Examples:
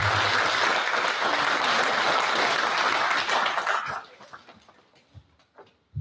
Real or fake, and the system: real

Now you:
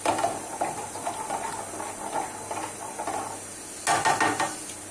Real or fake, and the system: real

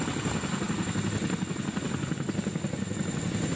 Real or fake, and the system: real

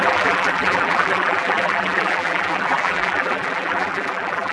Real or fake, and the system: fake, vocoder, BigVGAN v2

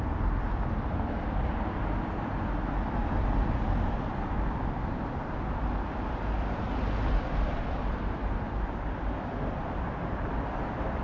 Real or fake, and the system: fake, vocoder, BigVGAN v2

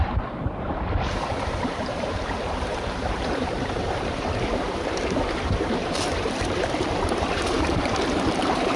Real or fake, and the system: fake, vocoder, BigVGAN v2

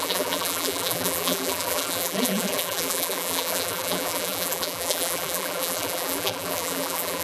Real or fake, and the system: fake, vocoder, BigVGAN v2